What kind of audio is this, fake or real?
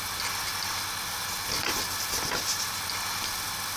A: real